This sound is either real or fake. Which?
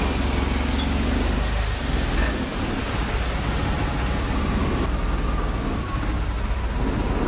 real